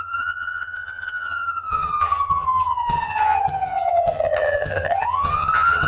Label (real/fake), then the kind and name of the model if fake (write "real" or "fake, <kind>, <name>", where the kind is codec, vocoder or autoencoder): fake, vocoder, HiFi-GAN